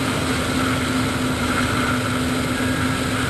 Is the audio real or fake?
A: real